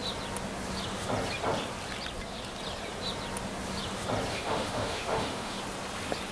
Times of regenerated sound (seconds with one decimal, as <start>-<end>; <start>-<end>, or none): 4.3-5.6